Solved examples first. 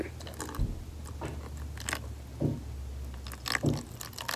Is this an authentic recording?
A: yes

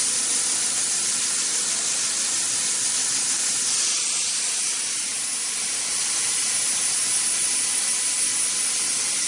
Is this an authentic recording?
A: yes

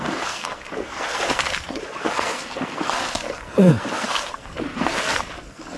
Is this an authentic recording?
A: no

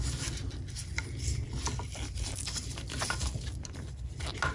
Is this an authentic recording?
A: yes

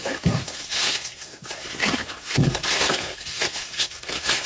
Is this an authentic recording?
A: no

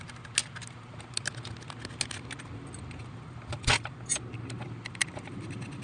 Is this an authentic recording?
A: yes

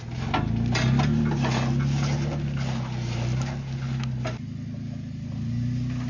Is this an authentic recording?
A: yes